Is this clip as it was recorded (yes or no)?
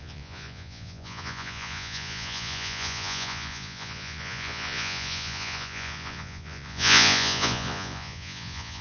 no